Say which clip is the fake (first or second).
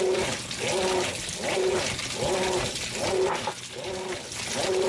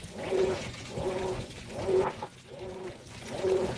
second